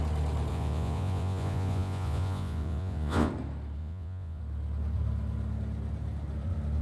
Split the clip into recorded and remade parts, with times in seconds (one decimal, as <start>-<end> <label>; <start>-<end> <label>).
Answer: 0.0-0.5 recorded; 0.5-3.3 remade; 3.3-3.8 recorded; 3.8-4.4 remade; 4.4-6.8 recorded